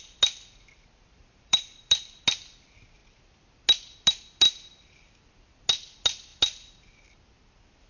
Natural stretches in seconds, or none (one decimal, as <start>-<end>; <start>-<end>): 0.0-1.2; 2.2-7.9